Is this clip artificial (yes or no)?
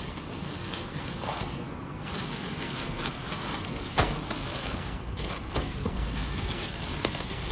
yes